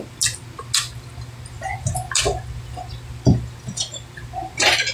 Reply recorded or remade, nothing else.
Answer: recorded